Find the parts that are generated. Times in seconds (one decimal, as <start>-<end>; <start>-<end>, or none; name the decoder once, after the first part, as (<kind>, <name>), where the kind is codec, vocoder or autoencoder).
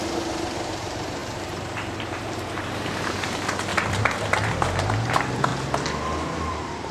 0.0-3.7 (vocoder, BigVGAN v2); 4.9-5.5; 6.5-6.9